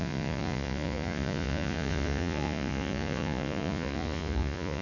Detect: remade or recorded remade